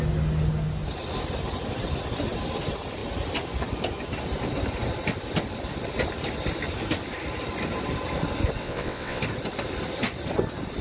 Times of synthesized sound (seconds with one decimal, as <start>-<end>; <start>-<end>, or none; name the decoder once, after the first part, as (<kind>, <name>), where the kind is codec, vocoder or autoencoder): 8.6-9.2 (vocoder, WaveNeXt)